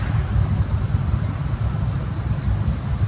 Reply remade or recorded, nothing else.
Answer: recorded